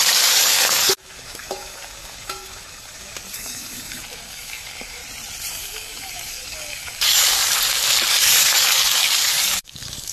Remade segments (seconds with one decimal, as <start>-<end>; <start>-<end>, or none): 0.0-5.0; 5.5-7.4; 8.1-10.1